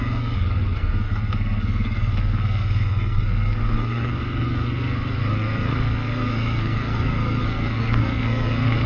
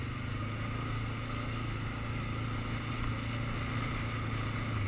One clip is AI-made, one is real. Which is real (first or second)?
second